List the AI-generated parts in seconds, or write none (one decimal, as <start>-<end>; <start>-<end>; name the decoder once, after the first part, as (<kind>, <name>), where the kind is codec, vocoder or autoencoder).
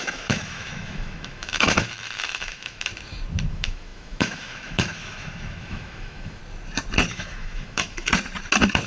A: 0.0-2.9 (autoencoder, DAC-VAE); 3.5-6.4; 7.1-8.1